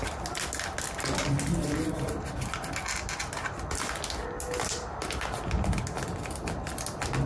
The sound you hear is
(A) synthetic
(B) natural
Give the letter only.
B